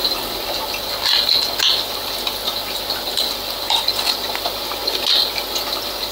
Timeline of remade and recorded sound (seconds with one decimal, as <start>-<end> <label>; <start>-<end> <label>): 0.0-6.1 recorded